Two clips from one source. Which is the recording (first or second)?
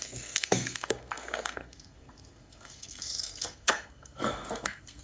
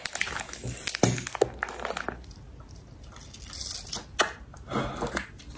second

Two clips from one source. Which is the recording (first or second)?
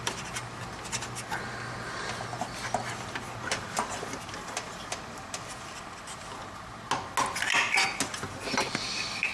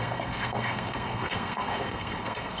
first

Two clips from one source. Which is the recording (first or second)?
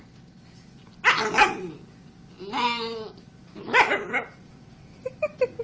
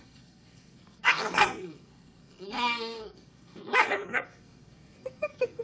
first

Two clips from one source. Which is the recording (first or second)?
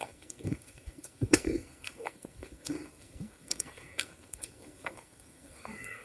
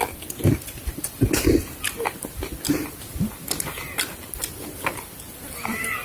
second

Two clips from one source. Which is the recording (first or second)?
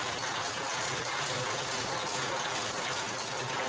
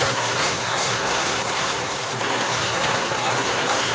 first